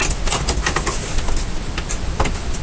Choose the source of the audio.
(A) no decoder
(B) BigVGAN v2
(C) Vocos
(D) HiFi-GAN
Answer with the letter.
A